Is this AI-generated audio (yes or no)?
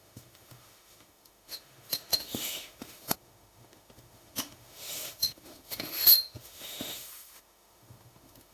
yes